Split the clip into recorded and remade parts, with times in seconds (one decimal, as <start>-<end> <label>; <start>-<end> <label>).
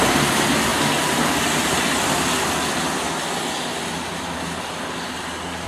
0.0-5.7 recorded